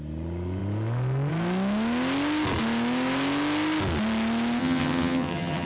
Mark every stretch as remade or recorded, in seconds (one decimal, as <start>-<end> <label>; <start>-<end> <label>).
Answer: 0.0-4.6 recorded; 4.6-5.7 remade